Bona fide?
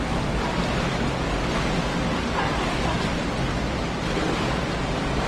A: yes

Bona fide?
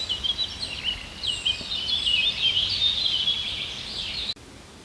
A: yes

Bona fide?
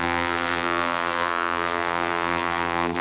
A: no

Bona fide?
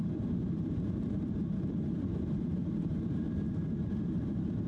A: no